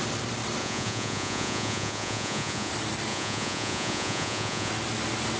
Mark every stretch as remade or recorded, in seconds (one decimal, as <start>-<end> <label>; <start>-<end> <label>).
0.0-0.6 recorded; 0.6-2.7 remade; 2.7-3.1 recorded; 3.1-4.7 remade; 4.7-5.4 recorded